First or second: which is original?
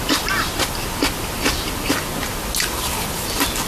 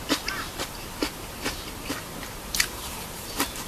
first